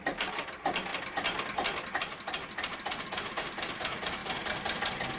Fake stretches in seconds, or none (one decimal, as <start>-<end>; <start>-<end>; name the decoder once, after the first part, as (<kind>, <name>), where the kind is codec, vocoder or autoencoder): 4.2-4.8 (vocoder, BigVGAN v2)